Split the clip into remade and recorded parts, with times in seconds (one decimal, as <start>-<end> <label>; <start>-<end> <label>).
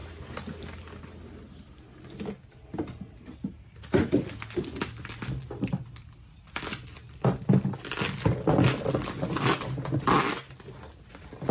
0.0-11.5 recorded